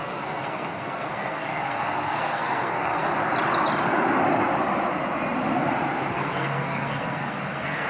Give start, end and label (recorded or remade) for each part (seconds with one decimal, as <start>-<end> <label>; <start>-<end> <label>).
0.0-3.1 remade; 3.1-6.1 recorded; 6.1-7.9 remade